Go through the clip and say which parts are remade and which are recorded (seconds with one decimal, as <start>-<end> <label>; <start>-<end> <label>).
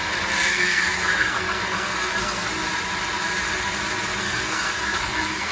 0.0-0.5 recorded; 0.5-2.5 remade; 2.5-4.2 recorded; 4.2-5.5 remade